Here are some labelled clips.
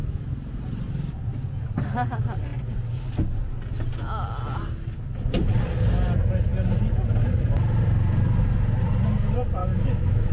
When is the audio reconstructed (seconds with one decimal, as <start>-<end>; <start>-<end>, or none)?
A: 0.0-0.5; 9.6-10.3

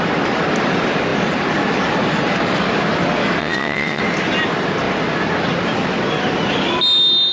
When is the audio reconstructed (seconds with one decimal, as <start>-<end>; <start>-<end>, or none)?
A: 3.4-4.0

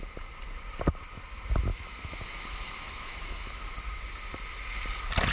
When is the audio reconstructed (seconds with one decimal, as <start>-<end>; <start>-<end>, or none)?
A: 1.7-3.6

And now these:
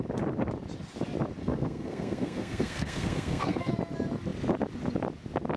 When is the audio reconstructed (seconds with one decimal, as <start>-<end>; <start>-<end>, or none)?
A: 1.4-3.7

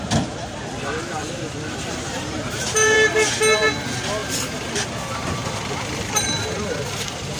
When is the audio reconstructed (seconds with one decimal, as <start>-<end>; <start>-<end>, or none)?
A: 1.2-3.4; 4.2-7.4